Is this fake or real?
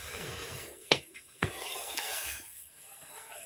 fake